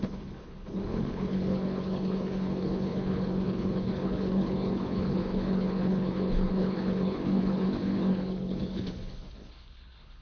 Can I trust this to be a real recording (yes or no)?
no